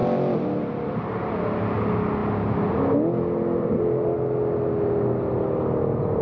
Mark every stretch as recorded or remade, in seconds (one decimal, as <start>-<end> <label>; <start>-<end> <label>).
0.0-6.2 recorded